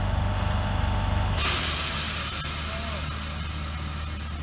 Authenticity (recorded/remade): recorded